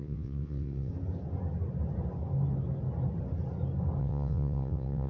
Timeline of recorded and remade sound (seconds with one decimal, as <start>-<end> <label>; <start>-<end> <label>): 0.0-0.9 remade; 0.9-4.0 recorded; 4.0-5.1 remade